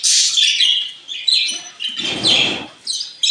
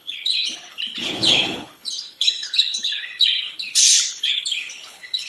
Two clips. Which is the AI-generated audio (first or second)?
second